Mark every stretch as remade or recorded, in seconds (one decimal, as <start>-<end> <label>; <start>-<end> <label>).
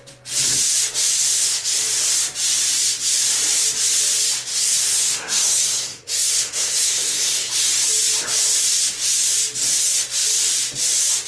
0.0-1.1 recorded; 1.1-1.8 remade; 1.8-4.5 recorded; 4.5-7.5 remade; 7.5-11.3 recorded